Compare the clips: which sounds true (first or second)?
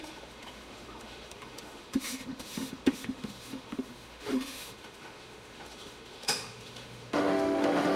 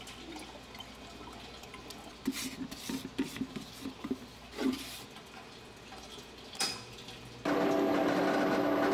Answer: second